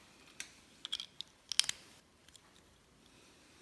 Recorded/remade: recorded